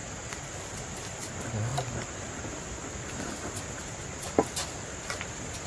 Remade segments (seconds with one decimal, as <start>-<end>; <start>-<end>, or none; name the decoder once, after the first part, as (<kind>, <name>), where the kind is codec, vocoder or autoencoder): 0.0-1.2 (vocoder, BigVGAN v2); 1.7-5.1